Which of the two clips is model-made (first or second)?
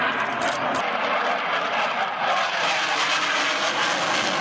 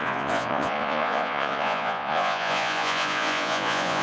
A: second